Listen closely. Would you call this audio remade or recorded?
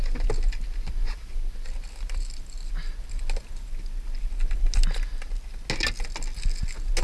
recorded